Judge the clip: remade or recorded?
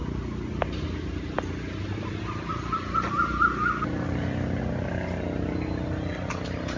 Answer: recorded